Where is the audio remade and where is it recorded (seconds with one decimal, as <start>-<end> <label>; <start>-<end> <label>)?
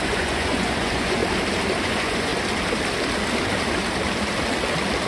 0.0-1.2 remade; 1.2-1.8 recorded; 1.8-2.3 remade; 2.3-5.1 recorded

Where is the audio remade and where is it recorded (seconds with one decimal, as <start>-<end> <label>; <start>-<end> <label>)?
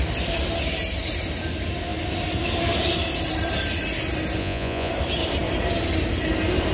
0.0-4.4 recorded; 4.4-4.9 remade; 4.9-6.7 recorded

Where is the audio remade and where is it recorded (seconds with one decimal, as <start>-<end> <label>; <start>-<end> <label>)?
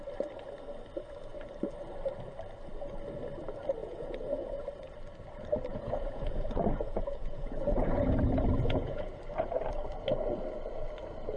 0.0-3.8 recorded; 3.8-4.6 remade; 4.6-5.7 recorded; 5.7-9.1 remade; 9.1-11.4 recorded